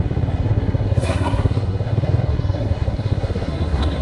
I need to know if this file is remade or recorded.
remade